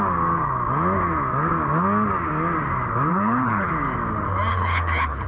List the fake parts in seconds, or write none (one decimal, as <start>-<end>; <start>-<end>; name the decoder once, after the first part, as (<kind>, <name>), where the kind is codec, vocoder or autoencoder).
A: 3.1-3.7 (codec, HILCodec); 4.5-5.3

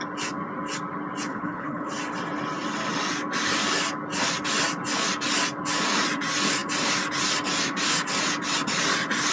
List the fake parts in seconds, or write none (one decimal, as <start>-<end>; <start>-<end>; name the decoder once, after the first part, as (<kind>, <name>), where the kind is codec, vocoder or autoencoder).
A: 1.3-1.9 (codec, HILCodec)

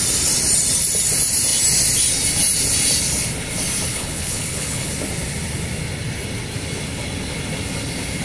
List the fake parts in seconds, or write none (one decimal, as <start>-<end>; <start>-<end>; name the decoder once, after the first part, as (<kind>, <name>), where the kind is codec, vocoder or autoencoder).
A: 3.9-4.9 (codec, HILCodec)

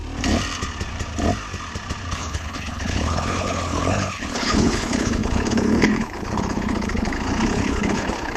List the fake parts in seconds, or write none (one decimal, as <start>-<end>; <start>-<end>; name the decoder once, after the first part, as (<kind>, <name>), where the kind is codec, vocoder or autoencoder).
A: 2.1-8.4 (codec, HILCodec)

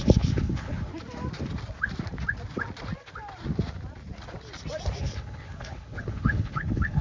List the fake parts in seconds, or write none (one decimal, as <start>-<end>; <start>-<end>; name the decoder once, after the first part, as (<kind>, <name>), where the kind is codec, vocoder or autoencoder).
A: 0.0-0.9 (codec, HILCodec); 5.0-7.0

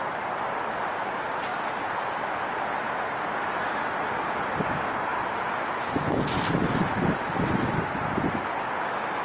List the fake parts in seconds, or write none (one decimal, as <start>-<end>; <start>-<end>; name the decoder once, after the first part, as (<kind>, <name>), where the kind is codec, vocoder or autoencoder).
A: none

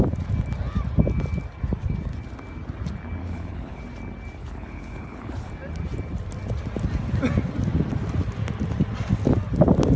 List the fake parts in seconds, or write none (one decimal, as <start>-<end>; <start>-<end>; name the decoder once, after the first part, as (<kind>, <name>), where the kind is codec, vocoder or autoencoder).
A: 3.2-3.8 (codec, HILCodec); 4.4-5.5